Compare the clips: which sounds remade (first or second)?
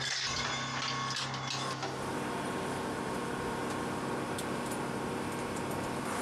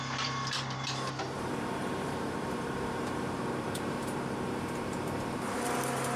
second